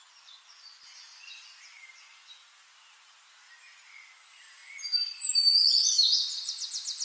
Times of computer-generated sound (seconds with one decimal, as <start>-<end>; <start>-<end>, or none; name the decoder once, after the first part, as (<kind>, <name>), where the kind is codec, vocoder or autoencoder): none